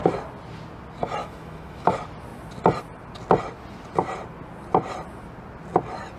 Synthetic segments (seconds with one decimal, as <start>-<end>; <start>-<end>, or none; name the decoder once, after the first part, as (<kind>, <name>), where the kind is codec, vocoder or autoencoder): 1.2-1.9 (autoencoder, DAC-VAE)